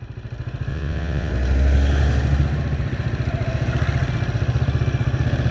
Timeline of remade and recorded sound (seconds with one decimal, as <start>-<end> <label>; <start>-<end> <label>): 0.0-0.7 recorded; 0.7-1.3 remade; 1.3-5.5 recorded